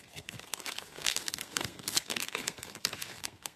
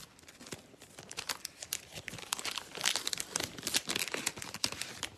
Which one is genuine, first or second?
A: second